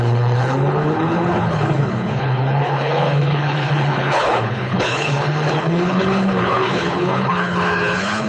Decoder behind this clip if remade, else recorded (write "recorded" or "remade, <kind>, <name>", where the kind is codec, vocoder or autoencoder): remade, codec, HILCodec